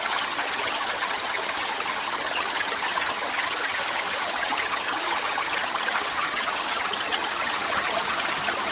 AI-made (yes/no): yes